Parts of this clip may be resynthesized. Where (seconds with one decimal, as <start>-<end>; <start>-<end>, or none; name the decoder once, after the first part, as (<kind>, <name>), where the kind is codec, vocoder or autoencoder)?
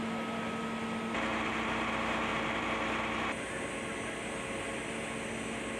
none